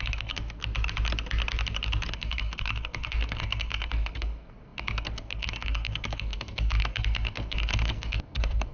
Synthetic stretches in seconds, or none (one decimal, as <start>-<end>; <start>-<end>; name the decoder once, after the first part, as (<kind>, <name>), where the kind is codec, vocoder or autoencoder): 0.0-0.6 (codec, SNAC); 2.1-8.7